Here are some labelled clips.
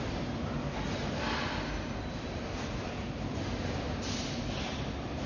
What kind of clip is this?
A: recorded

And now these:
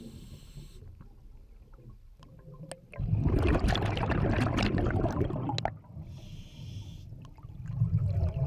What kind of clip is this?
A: recorded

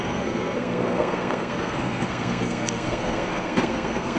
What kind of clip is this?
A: remade